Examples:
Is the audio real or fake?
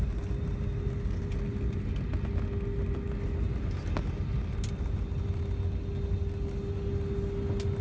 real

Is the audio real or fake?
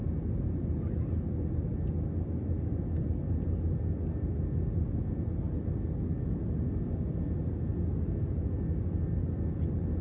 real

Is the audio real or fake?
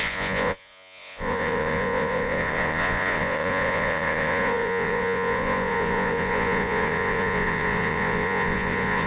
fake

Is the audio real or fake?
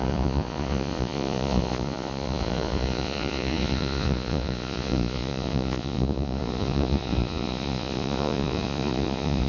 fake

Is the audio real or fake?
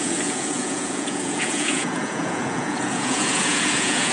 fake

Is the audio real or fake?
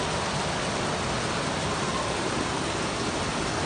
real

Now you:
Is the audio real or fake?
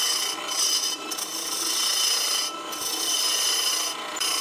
real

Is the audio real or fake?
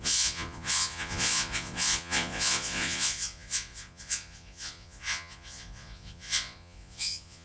fake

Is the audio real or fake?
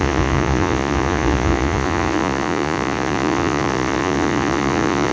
fake